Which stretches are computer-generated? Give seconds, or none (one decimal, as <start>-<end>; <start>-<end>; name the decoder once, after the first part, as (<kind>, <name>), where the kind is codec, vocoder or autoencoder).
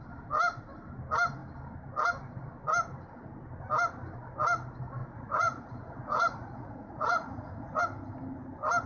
5.0-7.8 (vocoder, Vocos)